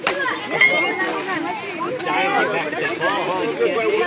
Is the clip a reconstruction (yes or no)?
no